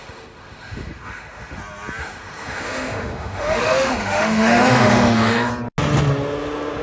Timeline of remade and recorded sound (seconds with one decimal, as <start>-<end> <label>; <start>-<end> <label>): 0.0-1.6 remade; 1.6-2.0 recorded; 2.0-5.5 remade; 5.5-6.8 recorded